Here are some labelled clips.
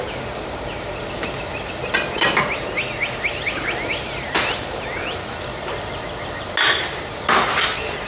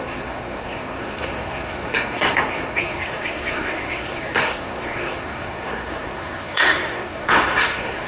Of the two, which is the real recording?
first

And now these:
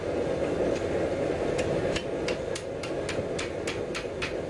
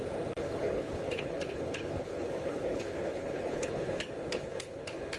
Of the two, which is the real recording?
first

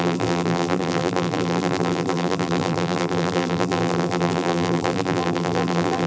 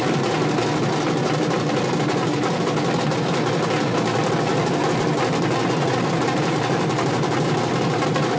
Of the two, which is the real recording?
second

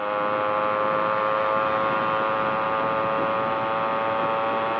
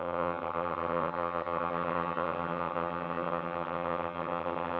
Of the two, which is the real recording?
first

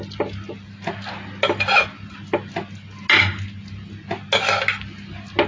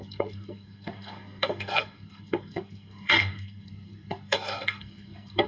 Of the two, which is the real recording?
first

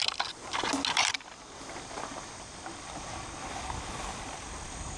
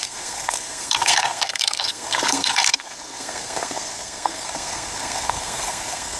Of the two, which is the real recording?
first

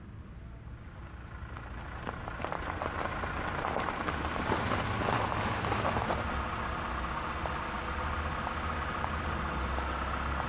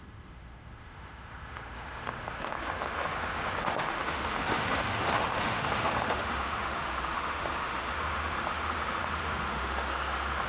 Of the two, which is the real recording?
first